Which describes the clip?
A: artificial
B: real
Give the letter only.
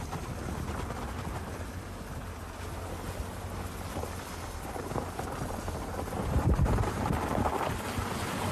B